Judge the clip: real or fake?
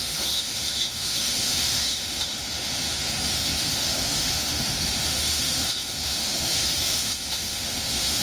fake